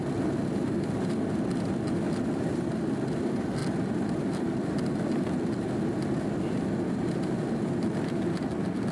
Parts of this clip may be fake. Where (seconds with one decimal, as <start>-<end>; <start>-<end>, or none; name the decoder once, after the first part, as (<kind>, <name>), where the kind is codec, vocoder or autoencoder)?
0.0-8.9 (vocoder, BigVGAN v2)